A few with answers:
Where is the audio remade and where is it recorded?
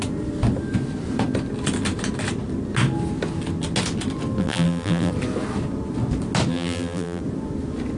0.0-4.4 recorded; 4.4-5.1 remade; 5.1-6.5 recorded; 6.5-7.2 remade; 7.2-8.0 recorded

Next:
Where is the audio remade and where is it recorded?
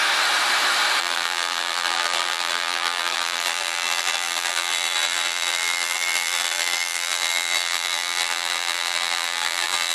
0.0-1.0 recorded; 1.0-9.9 remade